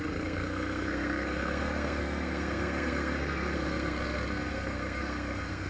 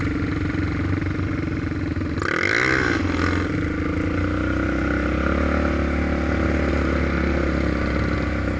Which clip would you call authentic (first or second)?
second